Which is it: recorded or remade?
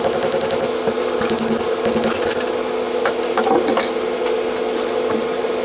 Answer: recorded